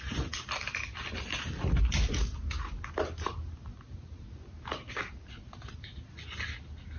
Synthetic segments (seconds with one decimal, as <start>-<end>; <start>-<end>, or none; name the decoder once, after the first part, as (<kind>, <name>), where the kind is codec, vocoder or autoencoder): 3.7-5.8 (vocoder, BigVGAN v2)